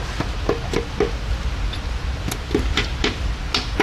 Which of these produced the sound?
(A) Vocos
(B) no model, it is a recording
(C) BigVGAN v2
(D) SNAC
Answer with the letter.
B